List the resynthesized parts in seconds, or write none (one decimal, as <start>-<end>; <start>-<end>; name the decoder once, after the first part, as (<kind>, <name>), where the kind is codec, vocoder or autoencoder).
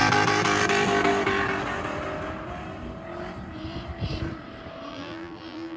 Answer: 4.9-5.8 (vocoder, BigVGAN v2)